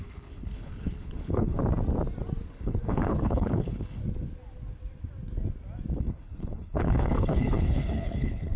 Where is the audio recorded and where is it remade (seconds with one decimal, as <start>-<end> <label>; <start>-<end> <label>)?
0.0-1.6 remade; 1.6-2.5 recorded; 2.5-4.0 remade; 4.0-6.0 recorded; 6.0-8.6 remade